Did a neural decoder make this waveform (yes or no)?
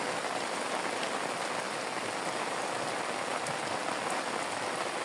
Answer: no